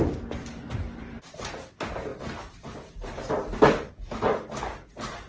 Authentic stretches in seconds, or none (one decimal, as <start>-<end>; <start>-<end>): 0.0-5.3